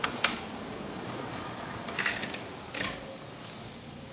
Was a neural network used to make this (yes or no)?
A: yes